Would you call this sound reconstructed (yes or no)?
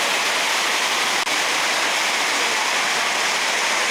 no